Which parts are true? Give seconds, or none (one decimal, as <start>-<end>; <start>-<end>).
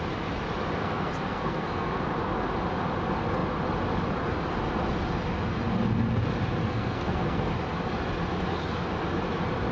0.0-0.8; 2.0-6.6; 7.5-9.7